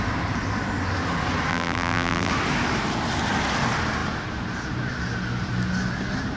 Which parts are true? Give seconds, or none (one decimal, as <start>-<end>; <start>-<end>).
0.0-1.5; 2.3-6.4